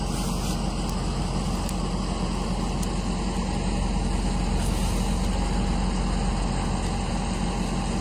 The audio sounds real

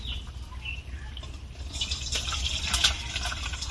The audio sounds real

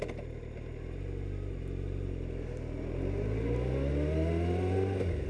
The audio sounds real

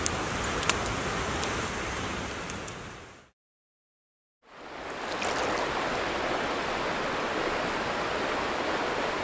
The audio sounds real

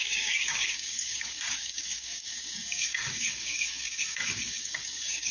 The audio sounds fake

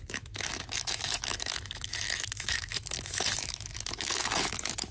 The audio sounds fake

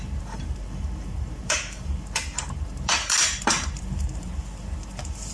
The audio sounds fake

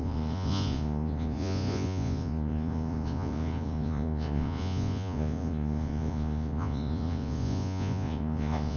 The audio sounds fake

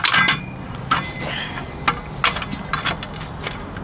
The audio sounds real